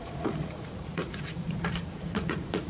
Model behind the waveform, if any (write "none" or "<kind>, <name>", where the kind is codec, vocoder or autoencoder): vocoder, Vocos